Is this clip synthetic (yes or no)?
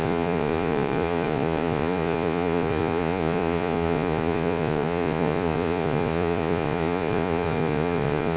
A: yes